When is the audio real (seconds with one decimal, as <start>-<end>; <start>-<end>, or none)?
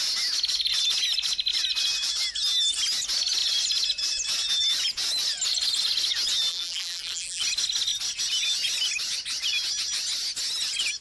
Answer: 0.0-6.5; 7.4-11.0